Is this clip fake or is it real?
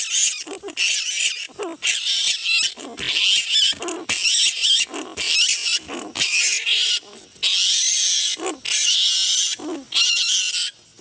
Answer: real